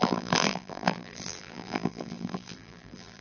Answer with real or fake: fake